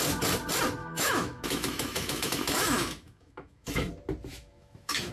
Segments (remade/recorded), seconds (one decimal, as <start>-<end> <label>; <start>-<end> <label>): 0.0-0.8 recorded; 0.8-3.9 remade; 3.9-4.3 recorded; 4.3-5.1 remade